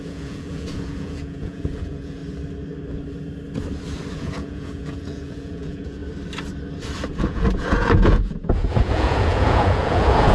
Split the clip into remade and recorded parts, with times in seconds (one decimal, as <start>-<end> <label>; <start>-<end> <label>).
0.0-2.2 remade; 2.2-4.1 recorded; 4.1-6.0 remade; 6.0-7.2 recorded; 7.2-10.3 remade